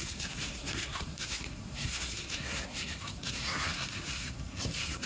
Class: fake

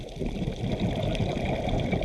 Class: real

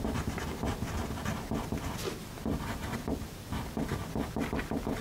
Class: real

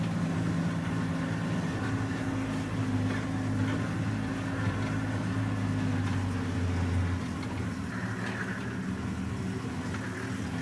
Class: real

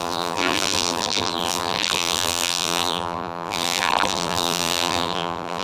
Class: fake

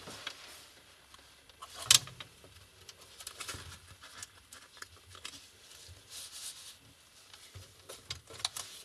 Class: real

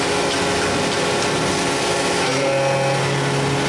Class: real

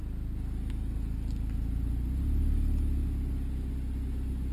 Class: real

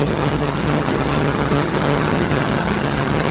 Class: fake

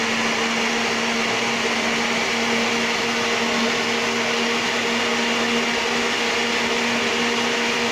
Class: real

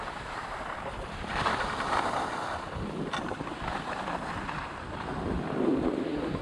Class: fake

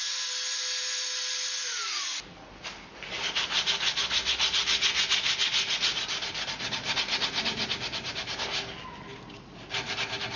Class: real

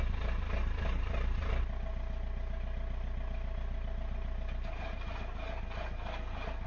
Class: real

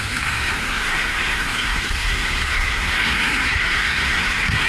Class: fake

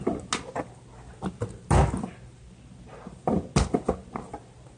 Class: real